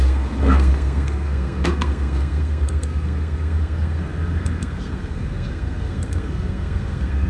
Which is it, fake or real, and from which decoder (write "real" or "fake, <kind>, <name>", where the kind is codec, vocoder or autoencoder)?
fake, codec, SNAC